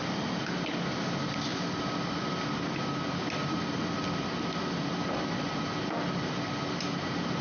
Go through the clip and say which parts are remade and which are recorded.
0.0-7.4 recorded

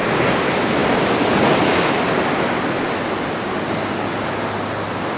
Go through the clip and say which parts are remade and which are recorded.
0.0-5.2 recorded